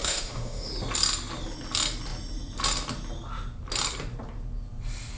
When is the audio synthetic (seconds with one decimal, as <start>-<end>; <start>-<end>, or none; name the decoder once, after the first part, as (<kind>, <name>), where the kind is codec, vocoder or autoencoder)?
0.0-0.7 (autoencoder, DAC-VAE)